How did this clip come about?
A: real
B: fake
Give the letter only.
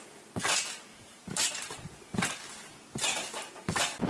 A